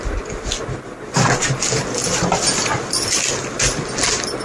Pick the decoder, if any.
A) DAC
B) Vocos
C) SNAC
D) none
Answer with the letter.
D